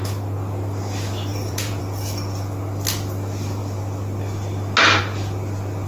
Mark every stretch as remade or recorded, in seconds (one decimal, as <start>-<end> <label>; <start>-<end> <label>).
0.0-1.3 recorded; 1.3-1.8 remade; 1.8-5.9 recorded